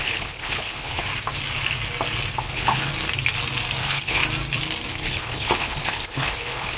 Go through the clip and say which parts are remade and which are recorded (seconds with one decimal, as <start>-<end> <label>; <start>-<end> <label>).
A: 0.0-1.1 remade; 1.1-2.4 recorded; 2.4-2.9 remade; 2.9-3.8 recorded; 3.8-4.2 remade; 4.2-4.9 recorded; 4.9-6.8 remade